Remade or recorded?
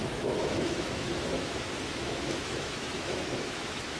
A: remade